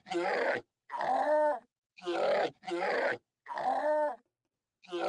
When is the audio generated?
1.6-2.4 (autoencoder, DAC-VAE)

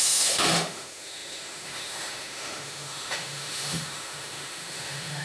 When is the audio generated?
0.0-5.2 (autoencoder, DAC-VAE)

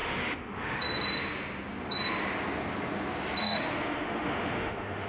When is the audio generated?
0.0-0.8 (autoencoder, DAC-VAE); 3.4-5.1

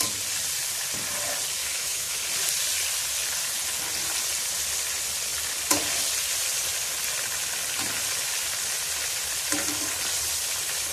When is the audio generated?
1.6-2.2 (autoencoder, DAC-VAE)

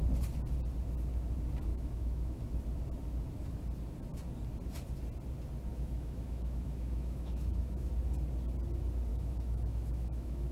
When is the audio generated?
1.7-2.4 (autoencoder, DAC-VAE); 5.7-7.9; 9.1-10.5

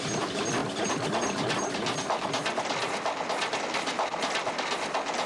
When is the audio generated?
none

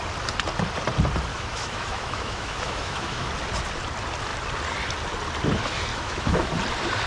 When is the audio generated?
1.3-3.3 (autoencoder, DAC-VAE); 5.9-6.5